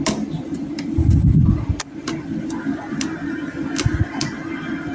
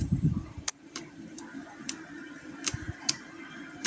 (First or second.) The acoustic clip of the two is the first